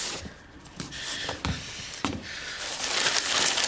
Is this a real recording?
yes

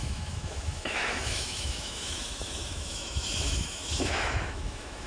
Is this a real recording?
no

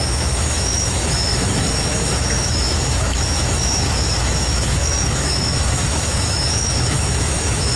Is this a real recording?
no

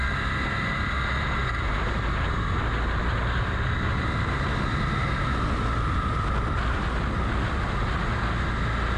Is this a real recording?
yes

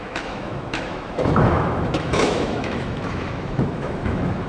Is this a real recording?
no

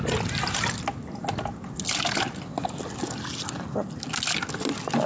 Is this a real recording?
yes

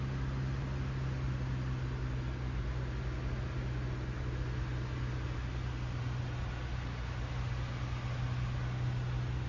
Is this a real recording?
yes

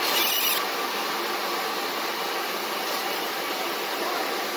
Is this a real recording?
yes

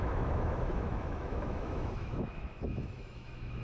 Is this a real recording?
no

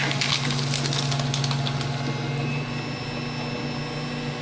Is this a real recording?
yes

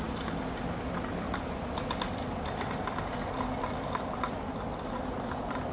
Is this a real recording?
yes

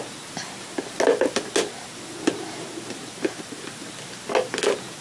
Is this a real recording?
yes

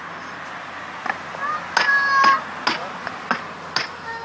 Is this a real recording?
yes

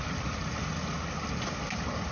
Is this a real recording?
yes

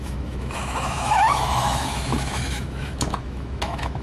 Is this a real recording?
no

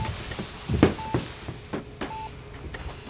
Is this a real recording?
yes